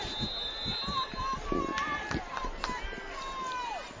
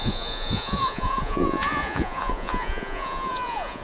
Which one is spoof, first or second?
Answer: second